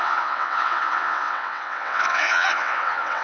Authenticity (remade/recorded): remade